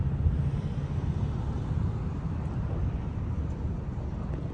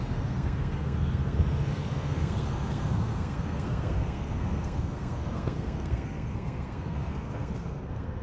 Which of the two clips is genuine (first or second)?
first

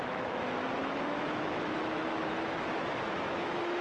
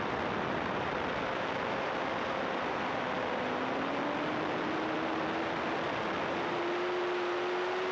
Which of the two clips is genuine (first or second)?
second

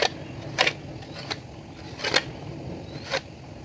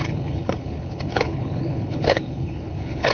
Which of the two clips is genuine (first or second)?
first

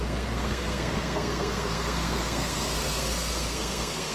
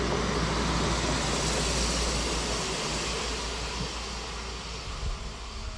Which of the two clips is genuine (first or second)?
second